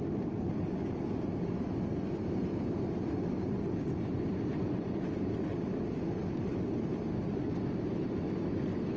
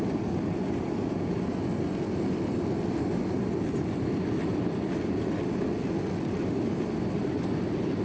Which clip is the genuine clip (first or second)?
second